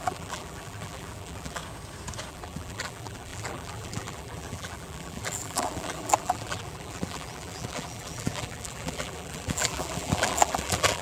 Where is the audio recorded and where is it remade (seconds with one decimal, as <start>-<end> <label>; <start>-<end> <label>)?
0.0-1.6 remade; 1.6-2.3 recorded; 2.3-11.0 remade